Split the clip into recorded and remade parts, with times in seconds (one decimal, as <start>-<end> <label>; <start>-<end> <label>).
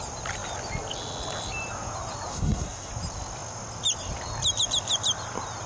0.0-2.3 recorded; 2.3-2.9 remade; 2.9-5.7 recorded